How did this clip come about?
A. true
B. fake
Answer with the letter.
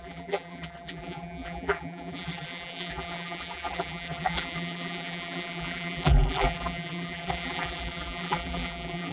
B